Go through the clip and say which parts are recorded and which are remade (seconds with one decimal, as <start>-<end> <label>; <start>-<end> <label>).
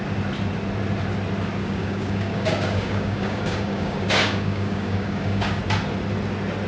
0.0-1.6 recorded; 1.6-5.6 remade; 5.6-6.7 recorded